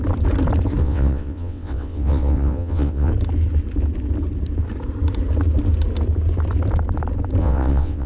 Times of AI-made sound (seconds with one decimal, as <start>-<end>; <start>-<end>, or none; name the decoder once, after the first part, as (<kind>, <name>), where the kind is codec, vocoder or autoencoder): 0.8-3.1 (vocoder, WaveNeXt); 7.4-8.1